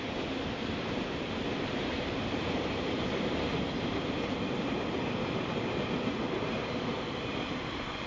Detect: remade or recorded remade